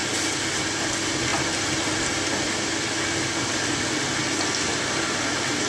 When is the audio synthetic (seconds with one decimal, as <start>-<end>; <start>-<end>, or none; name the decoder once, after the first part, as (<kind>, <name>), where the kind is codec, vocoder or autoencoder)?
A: none